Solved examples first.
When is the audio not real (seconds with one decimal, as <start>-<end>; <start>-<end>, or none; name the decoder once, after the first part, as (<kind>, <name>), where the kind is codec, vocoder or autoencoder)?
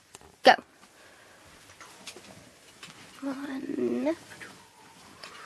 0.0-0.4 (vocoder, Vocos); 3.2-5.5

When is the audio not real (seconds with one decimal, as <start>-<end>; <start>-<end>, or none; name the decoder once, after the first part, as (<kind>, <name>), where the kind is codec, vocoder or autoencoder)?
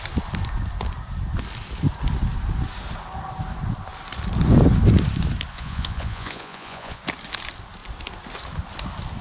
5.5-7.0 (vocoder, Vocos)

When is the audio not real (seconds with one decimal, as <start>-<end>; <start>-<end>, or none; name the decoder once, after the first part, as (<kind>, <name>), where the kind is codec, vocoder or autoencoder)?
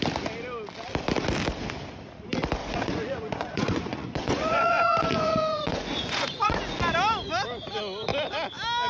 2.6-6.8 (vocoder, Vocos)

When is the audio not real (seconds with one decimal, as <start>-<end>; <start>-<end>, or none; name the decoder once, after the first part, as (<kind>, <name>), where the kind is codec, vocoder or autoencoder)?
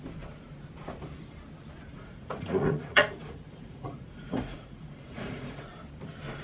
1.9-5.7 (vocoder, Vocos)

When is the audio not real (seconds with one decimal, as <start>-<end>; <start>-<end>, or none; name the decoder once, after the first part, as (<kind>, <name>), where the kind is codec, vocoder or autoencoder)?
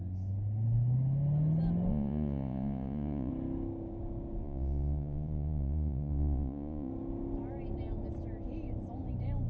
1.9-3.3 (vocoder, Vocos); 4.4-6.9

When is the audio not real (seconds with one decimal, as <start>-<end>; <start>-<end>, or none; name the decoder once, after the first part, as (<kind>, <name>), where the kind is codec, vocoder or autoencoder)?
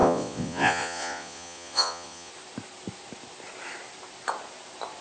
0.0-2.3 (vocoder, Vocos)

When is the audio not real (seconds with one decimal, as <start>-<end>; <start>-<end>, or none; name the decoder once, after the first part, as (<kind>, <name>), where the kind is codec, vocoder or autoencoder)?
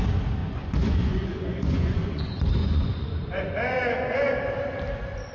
0.4-2.2 (vocoder, Vocos); 2.6-4.3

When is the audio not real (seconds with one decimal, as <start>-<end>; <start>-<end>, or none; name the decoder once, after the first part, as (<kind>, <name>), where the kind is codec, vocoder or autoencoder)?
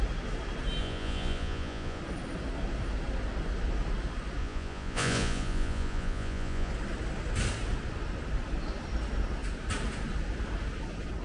0.8-2.0 (vocoder, Vocos); 4.4-6.7